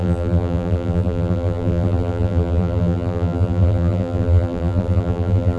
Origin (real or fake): fake